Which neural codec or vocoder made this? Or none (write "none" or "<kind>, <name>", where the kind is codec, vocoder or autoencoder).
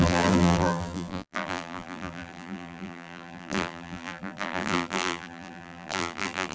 vocoder, BigVGAN v2